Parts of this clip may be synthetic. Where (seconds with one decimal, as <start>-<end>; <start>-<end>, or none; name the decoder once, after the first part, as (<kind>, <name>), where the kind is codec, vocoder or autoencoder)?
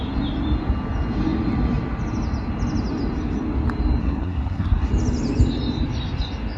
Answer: 4.0-4.9 (codec, SNAC)